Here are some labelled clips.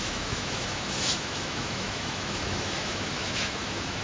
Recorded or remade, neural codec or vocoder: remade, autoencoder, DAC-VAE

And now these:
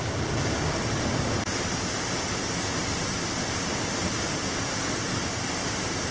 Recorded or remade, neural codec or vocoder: recorded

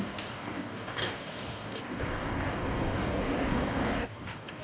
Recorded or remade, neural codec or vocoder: remade, codec, DAC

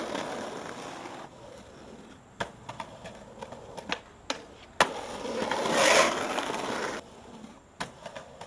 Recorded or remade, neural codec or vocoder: recorded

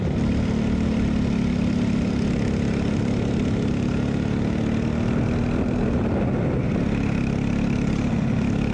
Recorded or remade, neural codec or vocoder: recorded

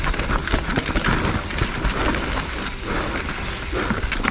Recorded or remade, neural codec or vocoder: recorded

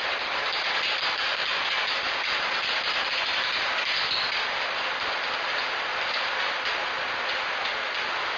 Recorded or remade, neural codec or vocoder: recorded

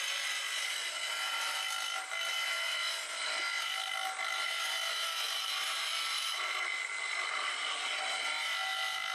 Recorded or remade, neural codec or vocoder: recorded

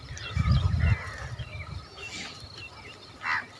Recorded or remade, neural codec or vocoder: recorded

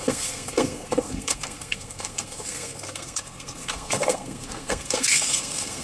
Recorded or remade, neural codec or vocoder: remade, codec, SNAC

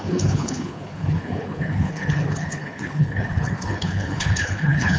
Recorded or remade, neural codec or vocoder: remade, codec, HILCodec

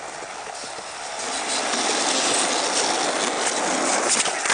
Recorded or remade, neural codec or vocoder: recorded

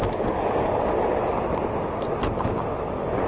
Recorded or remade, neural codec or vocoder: recorded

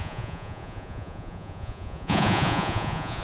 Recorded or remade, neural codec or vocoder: remade, vocoder, Vocos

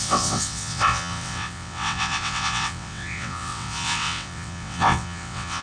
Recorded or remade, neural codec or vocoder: remade, vocoder, WaveNeXt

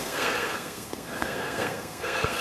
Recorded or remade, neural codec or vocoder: remade, codec, SNAC